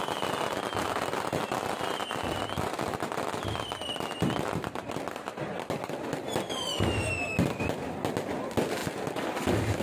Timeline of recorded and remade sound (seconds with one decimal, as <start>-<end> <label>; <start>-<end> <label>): 0.0-9.8 recorded